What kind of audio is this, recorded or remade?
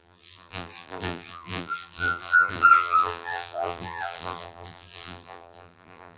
remade